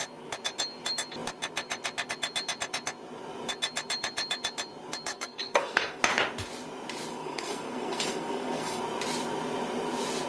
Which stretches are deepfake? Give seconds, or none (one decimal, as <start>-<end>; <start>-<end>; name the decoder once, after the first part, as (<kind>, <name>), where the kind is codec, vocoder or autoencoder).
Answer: 5.1-6.0 (codec, SNAC); 7.1-8.8